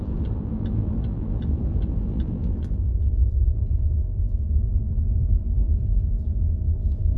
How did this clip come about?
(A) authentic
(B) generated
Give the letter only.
B